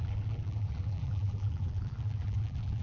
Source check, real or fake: fake